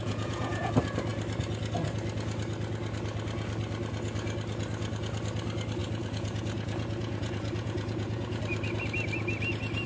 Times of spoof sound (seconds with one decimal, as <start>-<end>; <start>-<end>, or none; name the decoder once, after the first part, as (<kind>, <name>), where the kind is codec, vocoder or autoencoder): 0.0-0.7 (vocoder, Vocos); 5.8-8.4